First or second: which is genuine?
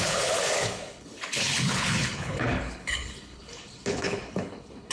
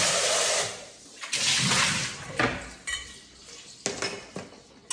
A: second